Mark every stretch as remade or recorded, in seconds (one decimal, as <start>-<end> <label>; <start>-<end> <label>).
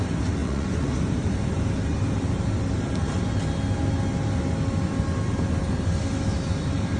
0.0-0.4 recorded; 0.4-1.0 remade; 1.0-7.0 recorded